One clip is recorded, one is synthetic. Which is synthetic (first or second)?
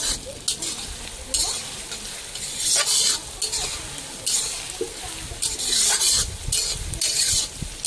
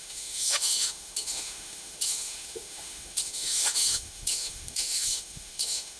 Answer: second